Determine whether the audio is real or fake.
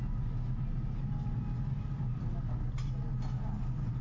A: real